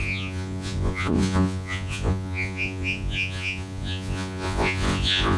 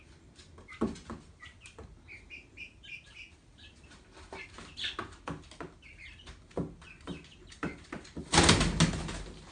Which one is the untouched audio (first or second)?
second